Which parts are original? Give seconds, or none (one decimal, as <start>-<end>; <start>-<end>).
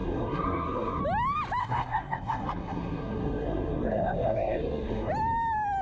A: 1.0-1.6; 5.1-5.8